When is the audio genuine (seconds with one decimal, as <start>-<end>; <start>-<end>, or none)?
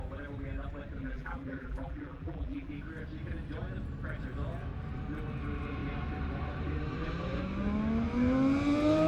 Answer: 0.0-1.0; 2.7-9.1